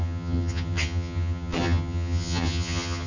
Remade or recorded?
remade